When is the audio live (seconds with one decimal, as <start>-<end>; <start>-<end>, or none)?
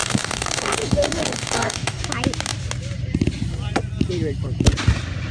2.0-5.3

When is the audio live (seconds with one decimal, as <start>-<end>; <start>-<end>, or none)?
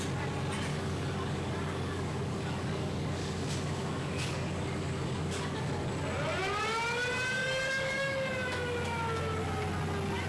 0.0-0.7; 5.9-7.4; 8.3-10.3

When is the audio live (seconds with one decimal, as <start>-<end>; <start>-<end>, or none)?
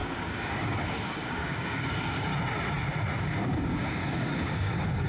2.3-3.2